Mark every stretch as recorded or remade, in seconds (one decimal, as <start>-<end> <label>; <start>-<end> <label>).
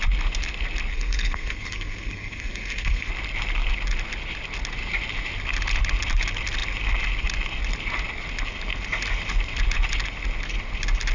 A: 0.0-0.9 recorded; 0.9-3.1 remade; 3.1-11.1 recorded